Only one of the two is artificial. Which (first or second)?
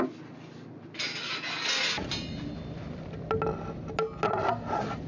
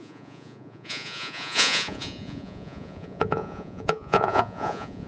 second